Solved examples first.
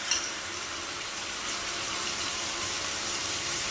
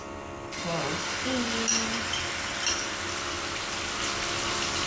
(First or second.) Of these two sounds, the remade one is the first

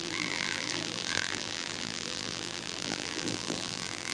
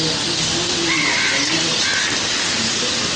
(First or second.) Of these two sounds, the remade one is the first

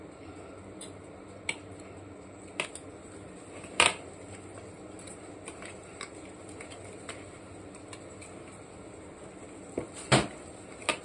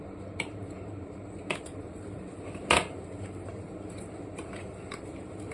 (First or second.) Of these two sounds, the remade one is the second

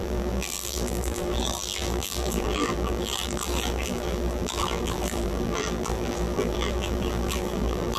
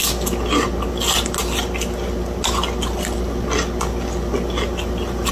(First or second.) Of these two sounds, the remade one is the first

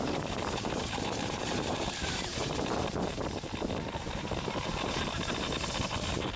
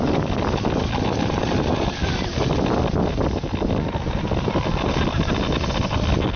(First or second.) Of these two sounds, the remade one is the first